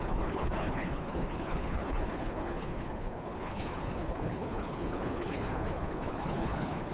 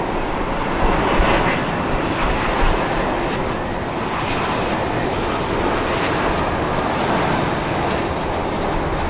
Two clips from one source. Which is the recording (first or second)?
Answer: second